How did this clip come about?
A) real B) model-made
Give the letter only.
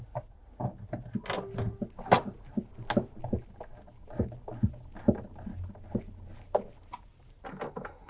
A